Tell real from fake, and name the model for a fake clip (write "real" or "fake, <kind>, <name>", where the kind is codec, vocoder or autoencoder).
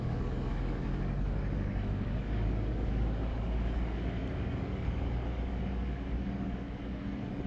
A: fake, codec, DAC